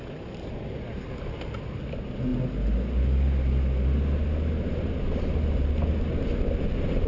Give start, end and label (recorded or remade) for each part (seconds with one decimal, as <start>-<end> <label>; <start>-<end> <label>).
0.0-7.1 recorded